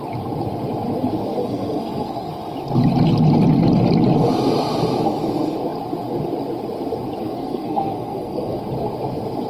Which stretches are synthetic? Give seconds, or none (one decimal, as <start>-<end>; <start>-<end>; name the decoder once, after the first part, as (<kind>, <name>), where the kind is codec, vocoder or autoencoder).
1.4-2.3 (codec, SNAC); 7.2-8.6